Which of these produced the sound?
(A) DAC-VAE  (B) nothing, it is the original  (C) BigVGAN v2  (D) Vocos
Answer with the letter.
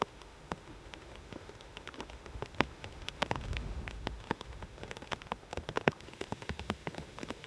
A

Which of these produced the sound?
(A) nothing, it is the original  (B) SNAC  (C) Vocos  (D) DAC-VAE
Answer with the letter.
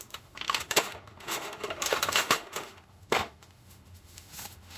D